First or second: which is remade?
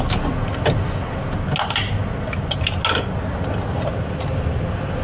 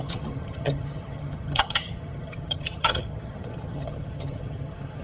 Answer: second